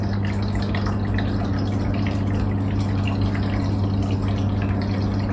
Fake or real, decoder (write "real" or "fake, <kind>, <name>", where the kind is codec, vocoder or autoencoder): real